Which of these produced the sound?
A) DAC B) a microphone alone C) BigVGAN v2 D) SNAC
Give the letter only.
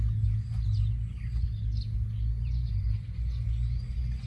B